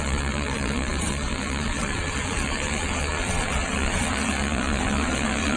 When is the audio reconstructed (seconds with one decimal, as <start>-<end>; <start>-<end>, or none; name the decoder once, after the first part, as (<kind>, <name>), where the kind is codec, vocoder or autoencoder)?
0.0-5.6 (vocoder, WaveNeXt)